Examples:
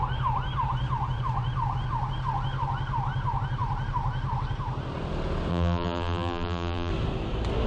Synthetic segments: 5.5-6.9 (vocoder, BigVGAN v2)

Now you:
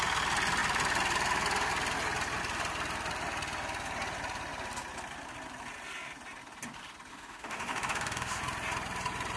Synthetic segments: 7.1-8.4 (autoencoder, DAC-VAE)

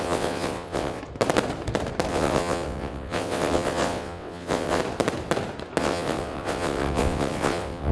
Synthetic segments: 0.0-1.0 (vocoder, WaveNeXt); 2.1-4.8; 5.8-7.9